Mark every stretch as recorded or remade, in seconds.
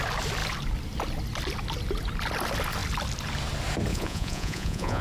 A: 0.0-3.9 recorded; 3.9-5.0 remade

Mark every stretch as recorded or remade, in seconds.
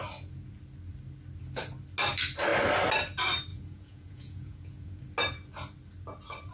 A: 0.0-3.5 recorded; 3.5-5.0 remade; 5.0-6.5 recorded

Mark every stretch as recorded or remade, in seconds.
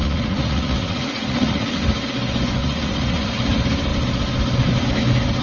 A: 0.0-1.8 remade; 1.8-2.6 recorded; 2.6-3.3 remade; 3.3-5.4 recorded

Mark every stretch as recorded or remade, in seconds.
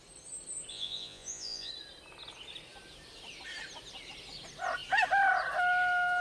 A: 0.0-0.7 recorded; 0.7-1.7 remade; 1.7-6.2 recorded